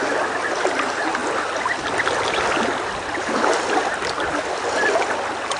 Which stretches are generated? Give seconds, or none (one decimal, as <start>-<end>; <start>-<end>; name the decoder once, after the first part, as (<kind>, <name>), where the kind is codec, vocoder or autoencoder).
none